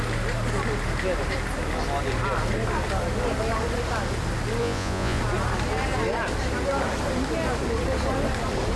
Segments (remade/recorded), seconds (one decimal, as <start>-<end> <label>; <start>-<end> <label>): 0.0-4.6 recorded; 4.6-5.2 remade; 5.2-8.8 recorded